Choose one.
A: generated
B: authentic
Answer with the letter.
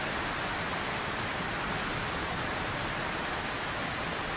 B